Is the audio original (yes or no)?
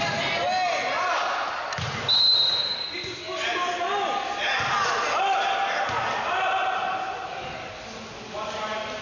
yes